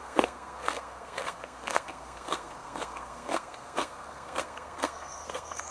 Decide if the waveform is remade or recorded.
remade